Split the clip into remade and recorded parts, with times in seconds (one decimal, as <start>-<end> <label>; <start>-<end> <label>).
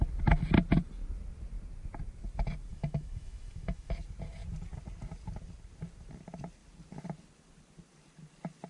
0.0-2.7 recorded; 2.7-3.9 remade; 3.9-8.7 recorded